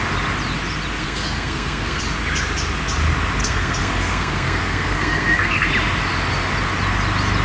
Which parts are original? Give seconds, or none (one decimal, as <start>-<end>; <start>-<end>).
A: 0.0-1.0; 2.0-3.4; 5.7-7.4